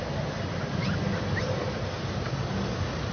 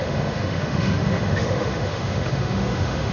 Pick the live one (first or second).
first